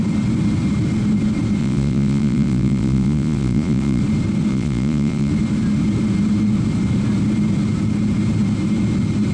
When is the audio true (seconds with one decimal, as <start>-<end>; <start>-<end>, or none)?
0.0-1.6; 4.0-4.5; 5.3-9.3